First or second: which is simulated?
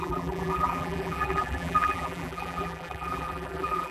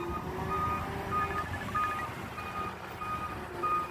first